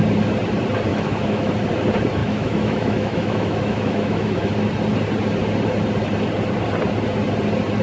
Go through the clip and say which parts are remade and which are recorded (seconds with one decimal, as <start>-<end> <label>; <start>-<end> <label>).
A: 0.0-0.9 recorded; 0.9-1.5 remade; 1.5-2.2 recorded; 2.2-4.5 remade; 4.5-7.8 recorded